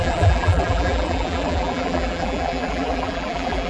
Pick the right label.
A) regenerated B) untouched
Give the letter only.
A